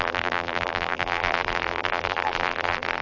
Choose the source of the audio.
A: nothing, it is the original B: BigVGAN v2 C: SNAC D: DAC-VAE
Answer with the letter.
B